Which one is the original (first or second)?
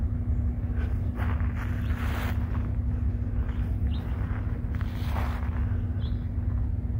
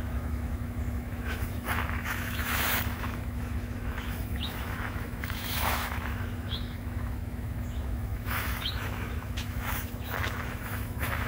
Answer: first